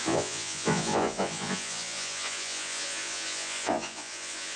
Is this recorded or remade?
remade